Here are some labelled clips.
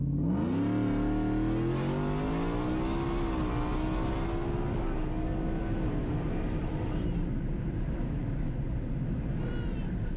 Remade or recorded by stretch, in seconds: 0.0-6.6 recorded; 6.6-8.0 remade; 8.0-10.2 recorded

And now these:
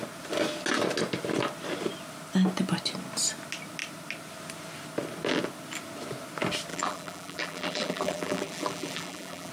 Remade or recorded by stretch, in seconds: 0.0-6.7 recorded; 6.7-9.5 remade

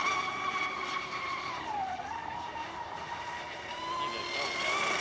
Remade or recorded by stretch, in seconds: 0.0-0.8 recorded; 0.8-1.6 remade; 1.6-2.2 recorded; 2.2-4.0 remade; 4.0-5.0 recorded